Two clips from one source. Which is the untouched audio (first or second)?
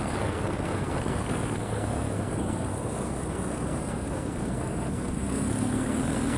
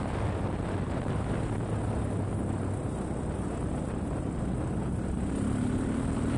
second